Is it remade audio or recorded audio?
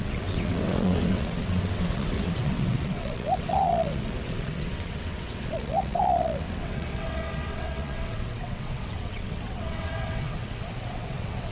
remade